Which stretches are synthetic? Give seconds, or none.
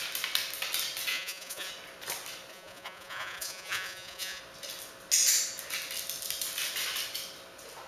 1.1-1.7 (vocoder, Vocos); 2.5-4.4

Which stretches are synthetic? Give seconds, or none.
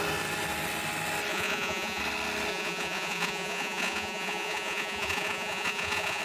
1.3-2.0 (vocoder, Vocos); 2.5-6.2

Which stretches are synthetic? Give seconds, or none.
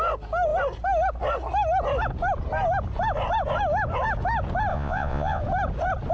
4.7-5.4 (vocoder, Vocos)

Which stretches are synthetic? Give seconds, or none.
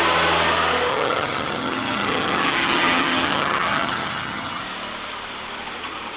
0.9-4.6 (vocoder, HiFi-GAN)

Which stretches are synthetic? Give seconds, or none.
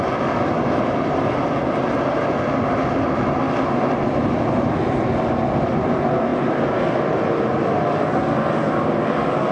none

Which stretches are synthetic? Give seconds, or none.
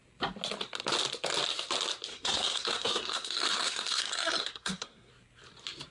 2.1-5.1 (codec, SNAC)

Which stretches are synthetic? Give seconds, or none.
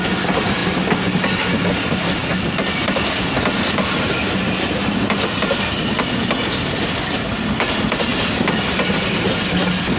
none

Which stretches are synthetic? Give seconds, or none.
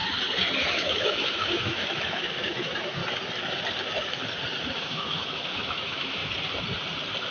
0.7-3.0 (autoencoder, DAC-VAE); 4.8-6.2